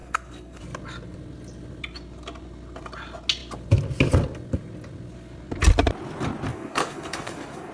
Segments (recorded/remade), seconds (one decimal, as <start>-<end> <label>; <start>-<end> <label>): 0.0-0.6 remade; 0.6-6.5 recorded; 6.5-7.7 remade